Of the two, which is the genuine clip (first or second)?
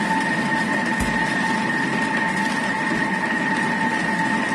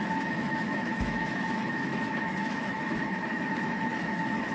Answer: first